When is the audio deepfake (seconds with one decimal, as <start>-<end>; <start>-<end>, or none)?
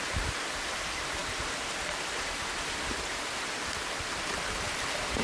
none